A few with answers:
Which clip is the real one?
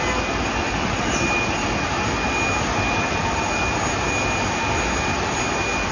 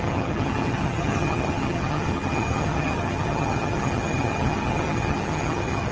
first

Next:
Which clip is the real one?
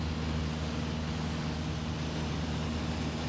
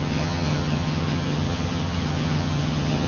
first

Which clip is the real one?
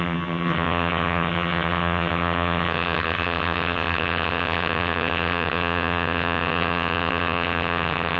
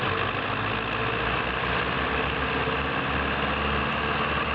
second